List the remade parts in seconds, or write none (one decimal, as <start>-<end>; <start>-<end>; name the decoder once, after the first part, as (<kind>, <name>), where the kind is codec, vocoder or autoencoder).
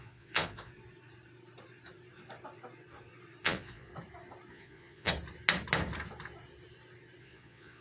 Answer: 0.0-0.7 (vocoder, Vocos); 3.4-3.9; 4.5-5.1; 7.2-7.8